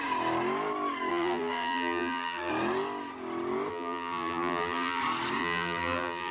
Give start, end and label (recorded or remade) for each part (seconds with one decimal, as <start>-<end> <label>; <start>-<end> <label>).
0.0-1.1 recorded; 1.1-2.5 remade; 2.5-3.7 recorded; 3.7-5.0 remade; 5.0-5.4 recorded; 5.4-6.3 remade